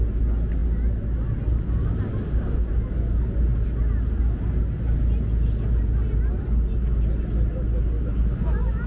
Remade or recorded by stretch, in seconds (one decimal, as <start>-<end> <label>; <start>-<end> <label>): 0.0-8.9 recorded